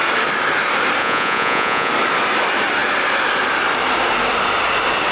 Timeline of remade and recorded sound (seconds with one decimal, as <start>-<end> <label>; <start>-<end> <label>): 0.0-1.0 recorded; 1.0-1.9 remade; 1.9-5.1 recorded